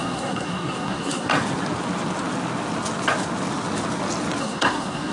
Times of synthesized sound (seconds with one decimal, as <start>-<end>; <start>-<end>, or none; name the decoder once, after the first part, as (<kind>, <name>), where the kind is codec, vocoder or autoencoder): 0.0-1.3 (codec, SNAC); 4.4-5.1